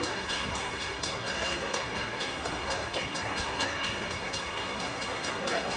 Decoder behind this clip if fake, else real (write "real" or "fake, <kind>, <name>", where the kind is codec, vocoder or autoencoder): fake, codec, SNAC